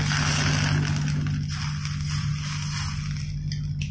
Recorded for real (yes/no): yes